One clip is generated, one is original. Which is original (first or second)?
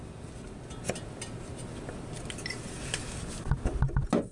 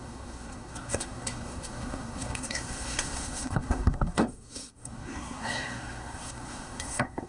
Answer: first